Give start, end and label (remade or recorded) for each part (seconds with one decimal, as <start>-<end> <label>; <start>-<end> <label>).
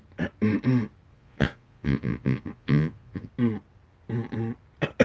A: 0.0-1.1 recorded; 1.1-3.3 remade; 3.3-5.0 recorded